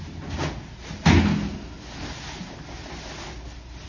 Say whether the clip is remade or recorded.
recorded